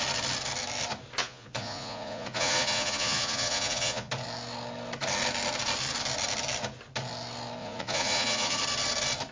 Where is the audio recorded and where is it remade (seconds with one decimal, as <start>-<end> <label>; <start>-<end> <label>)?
0.0-1.2 recorded; 1.2-4.1 remade; 4.1-7.6 recorded; 7.6-8.6 remade; 8.6-9.3 recorded